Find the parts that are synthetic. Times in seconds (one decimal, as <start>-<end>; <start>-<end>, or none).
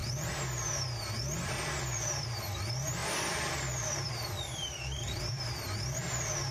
1.8-6.5